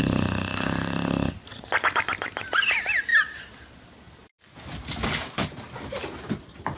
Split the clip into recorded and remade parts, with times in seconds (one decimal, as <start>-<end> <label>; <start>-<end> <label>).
0.0-6.8 recorded